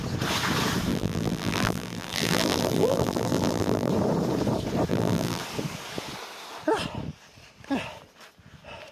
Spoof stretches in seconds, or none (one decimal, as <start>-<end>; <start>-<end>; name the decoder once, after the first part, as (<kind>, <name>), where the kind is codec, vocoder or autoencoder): 0.9-3.9 (vocoder, BigVGAN v2); 4.9-5.4